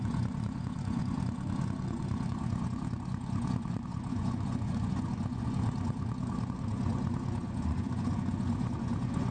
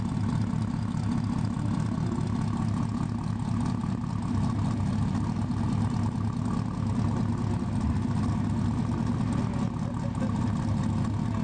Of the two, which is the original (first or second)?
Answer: second